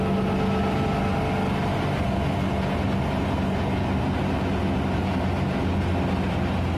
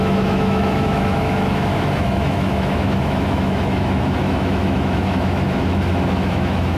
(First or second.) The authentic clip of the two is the first